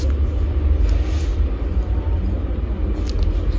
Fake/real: real